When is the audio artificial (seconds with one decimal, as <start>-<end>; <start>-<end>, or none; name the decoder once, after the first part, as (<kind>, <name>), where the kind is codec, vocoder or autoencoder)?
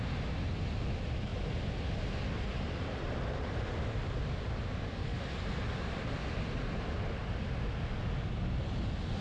none